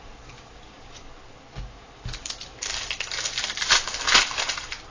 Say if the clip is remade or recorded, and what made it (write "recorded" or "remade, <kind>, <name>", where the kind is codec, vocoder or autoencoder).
recorded